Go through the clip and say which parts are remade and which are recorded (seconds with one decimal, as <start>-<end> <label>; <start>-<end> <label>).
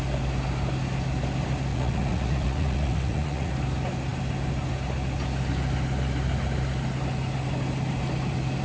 0.0-1.7 recorded; 1.7-3.5 remade; 3.5-8.6 recorded